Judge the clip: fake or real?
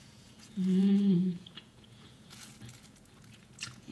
fake